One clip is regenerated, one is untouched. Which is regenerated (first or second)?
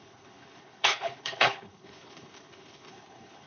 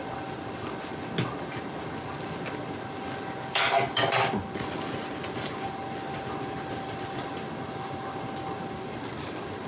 first